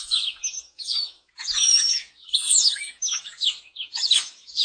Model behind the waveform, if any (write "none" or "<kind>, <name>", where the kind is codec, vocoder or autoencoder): autoencoder, DAC-VAE